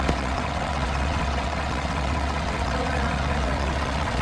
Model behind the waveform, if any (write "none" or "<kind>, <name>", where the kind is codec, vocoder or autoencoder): vocoder, WaveNeXt